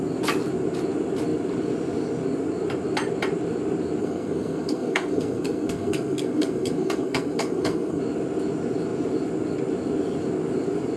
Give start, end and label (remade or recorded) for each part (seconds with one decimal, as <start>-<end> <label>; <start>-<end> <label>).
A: 0.0-4.0 recorded; 4.0-8.0 remade; 8.0-11.0 recorded